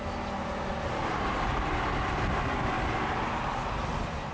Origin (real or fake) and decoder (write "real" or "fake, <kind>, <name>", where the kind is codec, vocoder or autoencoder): real